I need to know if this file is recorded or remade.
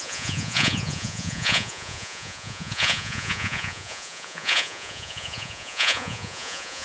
remade